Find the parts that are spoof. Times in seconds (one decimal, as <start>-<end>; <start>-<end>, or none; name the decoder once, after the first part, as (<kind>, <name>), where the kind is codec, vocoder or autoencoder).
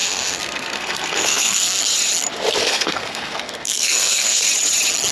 0.0-1.8 (codec, SNAC); 2.6-4.5